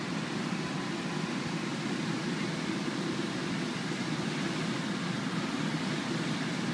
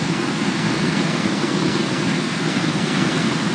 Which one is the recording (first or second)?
first